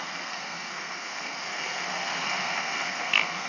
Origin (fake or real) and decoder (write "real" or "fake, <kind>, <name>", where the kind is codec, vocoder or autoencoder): fake, codec, SNAC